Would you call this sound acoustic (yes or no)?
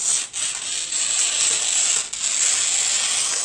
yes